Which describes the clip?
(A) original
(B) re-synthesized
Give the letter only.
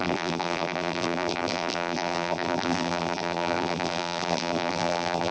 B